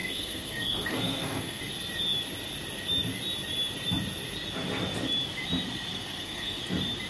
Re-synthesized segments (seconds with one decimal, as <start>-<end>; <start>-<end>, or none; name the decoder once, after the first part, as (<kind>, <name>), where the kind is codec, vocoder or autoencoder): 0.0-1.6 (codec, SNAC); 5.9-6.6